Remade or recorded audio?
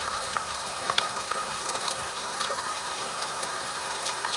remade